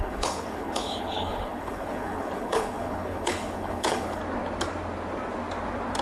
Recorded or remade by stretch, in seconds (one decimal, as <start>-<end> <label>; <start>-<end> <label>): 0.0-4.2 remade; 4.2-6.0 recorded